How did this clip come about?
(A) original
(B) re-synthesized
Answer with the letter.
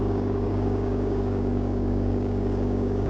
B